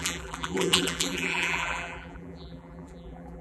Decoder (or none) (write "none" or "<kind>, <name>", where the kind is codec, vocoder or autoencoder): vocoder, BigVGAN v2